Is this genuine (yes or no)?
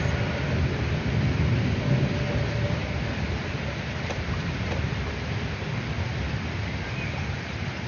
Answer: yes